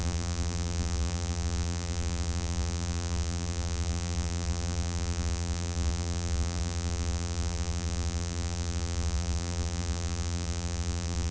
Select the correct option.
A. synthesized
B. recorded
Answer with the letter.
A